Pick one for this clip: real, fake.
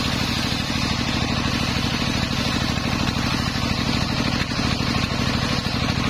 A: real